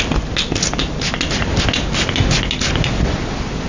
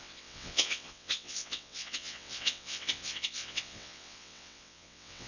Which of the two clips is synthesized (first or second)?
second